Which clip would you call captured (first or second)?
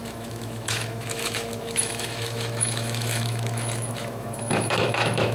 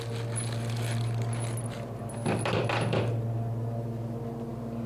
second